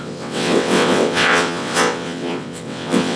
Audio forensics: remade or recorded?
remade